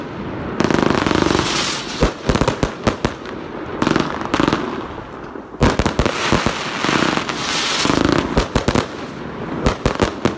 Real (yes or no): yes